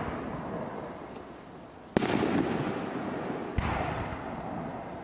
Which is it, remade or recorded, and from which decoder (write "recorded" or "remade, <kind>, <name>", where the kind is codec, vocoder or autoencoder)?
recorded